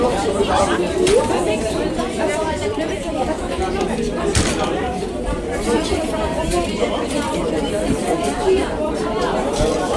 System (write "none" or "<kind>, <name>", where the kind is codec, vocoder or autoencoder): vocoder, BigVGAN v2